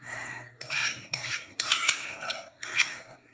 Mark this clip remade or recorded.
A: remade